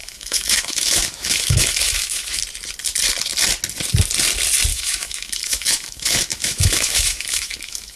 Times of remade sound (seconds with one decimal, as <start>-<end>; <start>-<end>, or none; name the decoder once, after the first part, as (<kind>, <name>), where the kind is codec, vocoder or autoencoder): 0.0-2.4 (autoencoder, DAC-VAE); 4.7-8.0